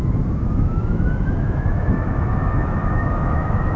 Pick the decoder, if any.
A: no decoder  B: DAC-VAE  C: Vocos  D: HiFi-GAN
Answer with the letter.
B